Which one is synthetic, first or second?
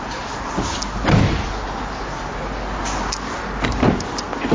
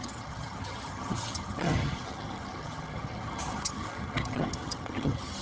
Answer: second